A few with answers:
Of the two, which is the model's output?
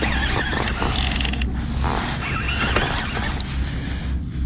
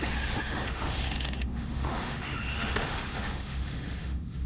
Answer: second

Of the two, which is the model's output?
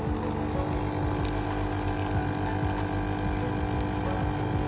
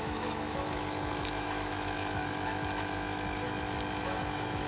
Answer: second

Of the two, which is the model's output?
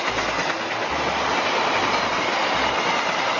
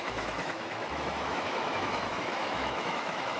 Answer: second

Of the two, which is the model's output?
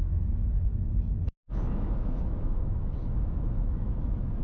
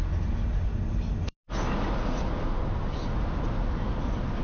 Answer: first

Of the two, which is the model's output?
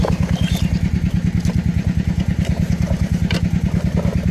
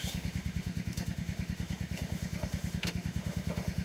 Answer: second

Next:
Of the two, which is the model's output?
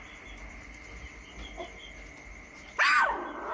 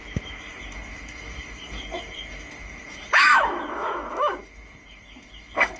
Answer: second